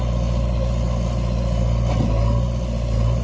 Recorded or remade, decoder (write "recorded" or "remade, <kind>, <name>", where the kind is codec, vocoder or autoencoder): recorded